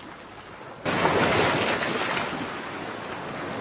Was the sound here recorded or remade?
recorded